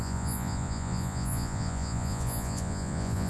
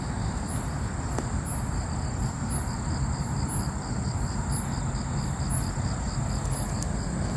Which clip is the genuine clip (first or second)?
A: second